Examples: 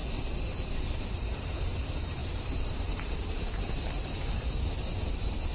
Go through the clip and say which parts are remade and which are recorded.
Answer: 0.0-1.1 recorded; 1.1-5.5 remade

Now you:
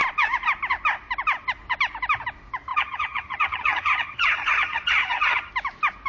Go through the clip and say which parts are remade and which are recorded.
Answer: 0.0-2.7 recorded; 2.7-5.5 remade; 5.5-6.1 recorded